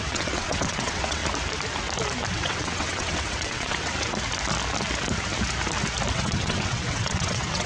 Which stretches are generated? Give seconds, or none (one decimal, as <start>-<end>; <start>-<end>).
0.0-1.2; 2.3-3.9; 6.1-7.7